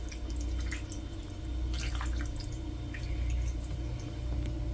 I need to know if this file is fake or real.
real